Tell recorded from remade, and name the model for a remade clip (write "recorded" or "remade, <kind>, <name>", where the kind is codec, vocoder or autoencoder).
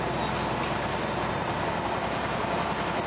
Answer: recorded